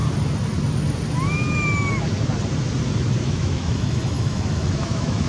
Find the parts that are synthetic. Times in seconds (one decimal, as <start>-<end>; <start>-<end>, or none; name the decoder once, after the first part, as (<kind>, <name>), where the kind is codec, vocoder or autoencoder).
3.2-5.3 (autoencoder, DAC-VAE)